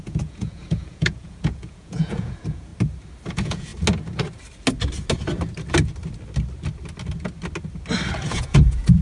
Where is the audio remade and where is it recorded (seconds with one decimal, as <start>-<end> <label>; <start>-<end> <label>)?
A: 0.0-2.7 remade; 2.7-3.3 recorded; 3.3-3.7 remade; 3.7-8.3 recorded; 8.3-9.0 remade